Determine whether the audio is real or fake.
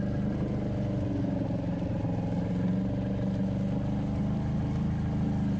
real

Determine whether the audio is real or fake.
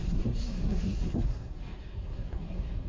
fake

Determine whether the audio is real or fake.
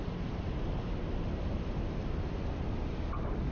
real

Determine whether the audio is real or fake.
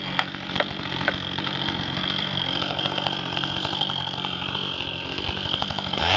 fake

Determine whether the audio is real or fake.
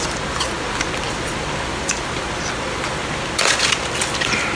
real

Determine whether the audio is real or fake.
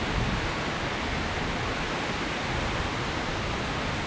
real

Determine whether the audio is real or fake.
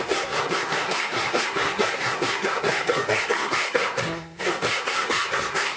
fake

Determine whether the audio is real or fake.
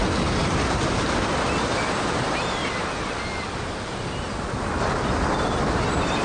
real